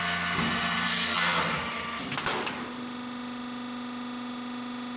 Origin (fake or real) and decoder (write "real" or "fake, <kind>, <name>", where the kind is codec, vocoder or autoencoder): real